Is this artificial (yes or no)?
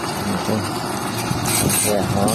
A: no